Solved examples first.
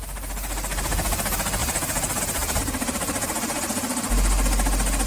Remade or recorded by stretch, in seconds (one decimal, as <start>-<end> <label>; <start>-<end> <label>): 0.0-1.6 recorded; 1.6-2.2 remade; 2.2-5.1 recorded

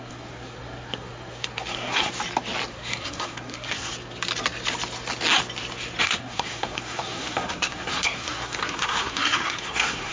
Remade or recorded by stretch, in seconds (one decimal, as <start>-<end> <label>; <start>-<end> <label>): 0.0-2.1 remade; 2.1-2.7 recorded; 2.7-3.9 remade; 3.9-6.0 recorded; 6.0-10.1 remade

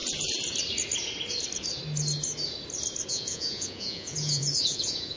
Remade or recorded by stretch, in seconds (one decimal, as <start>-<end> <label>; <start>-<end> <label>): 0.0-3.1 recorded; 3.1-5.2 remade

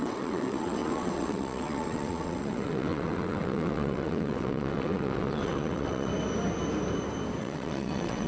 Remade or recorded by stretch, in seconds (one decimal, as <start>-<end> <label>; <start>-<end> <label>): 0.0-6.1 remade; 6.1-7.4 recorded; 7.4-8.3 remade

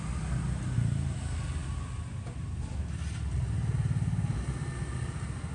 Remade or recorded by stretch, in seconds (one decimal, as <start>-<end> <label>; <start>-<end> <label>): 0.0-5.5 recorded

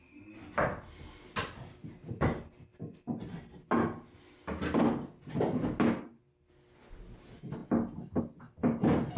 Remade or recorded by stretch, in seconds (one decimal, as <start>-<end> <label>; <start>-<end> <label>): 0.0-9.2 recorded